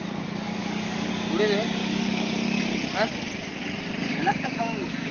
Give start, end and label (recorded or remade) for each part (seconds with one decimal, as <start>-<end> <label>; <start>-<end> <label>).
0.0-0.6 recorded; 0.6-1.1 remade; 1.1-1.8 recorded; 1.8-2.6 remade; 2.6-4.1 recorded; 4.1-5.1 remade